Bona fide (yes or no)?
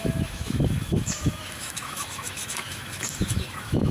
no